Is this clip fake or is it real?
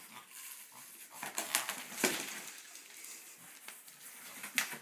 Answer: real